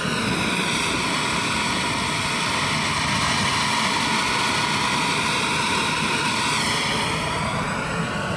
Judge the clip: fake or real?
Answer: real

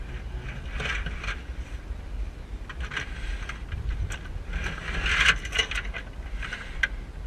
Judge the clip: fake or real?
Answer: real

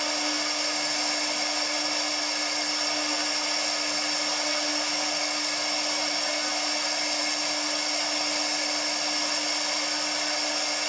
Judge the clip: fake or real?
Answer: real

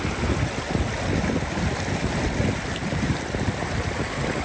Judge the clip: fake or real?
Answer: real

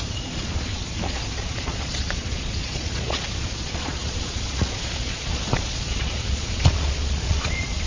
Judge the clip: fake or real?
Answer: fake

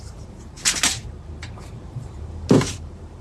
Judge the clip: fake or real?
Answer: fake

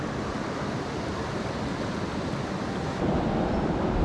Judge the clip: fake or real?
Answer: real